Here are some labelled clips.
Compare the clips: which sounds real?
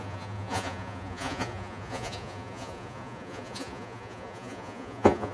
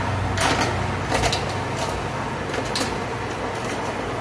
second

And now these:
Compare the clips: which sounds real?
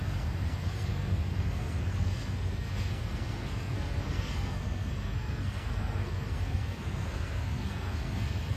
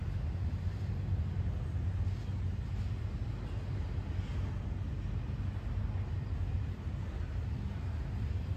second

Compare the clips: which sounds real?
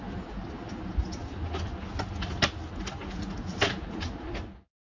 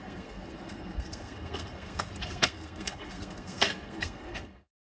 first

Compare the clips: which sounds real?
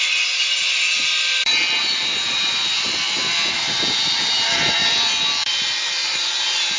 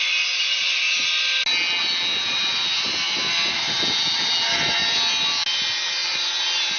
second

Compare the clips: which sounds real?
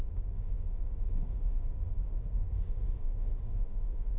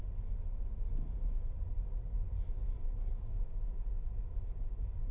second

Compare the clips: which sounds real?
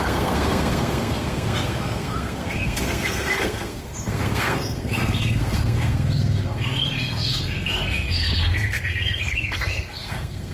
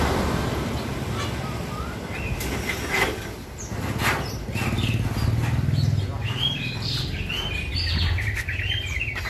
second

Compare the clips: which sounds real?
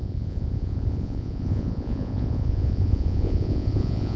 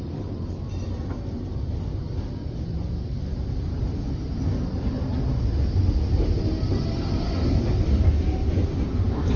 second